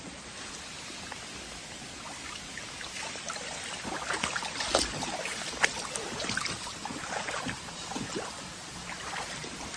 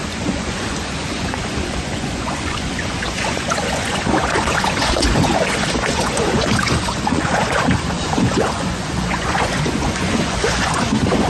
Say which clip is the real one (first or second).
first